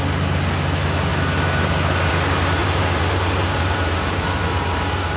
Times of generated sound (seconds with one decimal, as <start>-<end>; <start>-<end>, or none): 2.6-5.2